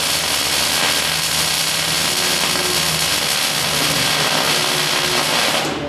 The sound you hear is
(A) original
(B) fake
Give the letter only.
A